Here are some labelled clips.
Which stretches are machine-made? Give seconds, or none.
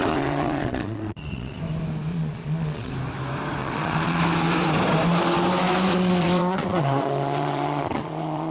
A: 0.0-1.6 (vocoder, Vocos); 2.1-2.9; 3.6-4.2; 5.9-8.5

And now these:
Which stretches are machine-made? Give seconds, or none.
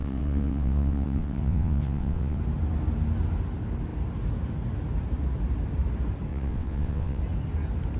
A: 0.0-2.4 (vocoder, WaveNeXt); 6.3-7.2